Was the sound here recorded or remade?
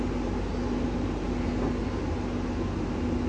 recorded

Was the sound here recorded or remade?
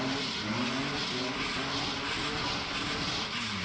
recorded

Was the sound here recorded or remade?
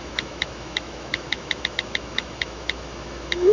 remade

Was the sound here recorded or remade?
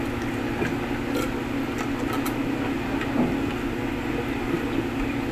recorded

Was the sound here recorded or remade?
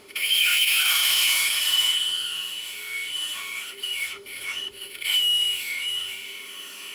remade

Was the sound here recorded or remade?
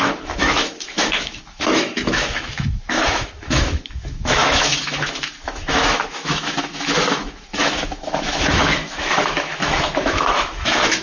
remade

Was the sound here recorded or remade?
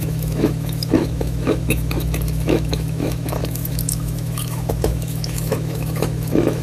remade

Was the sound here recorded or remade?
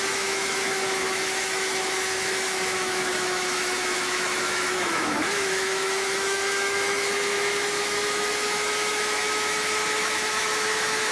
remade